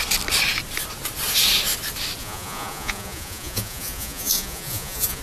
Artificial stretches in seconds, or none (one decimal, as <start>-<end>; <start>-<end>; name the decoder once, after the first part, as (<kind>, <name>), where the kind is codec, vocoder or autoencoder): 2.2-5.2 (vocoder, Vocos)